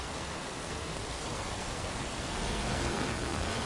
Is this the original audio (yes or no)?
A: no